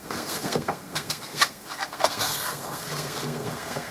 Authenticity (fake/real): fake